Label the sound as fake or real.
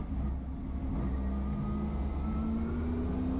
real